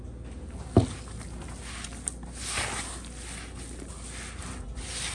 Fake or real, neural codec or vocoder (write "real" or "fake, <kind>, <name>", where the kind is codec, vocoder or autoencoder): real